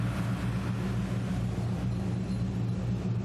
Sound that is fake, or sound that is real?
real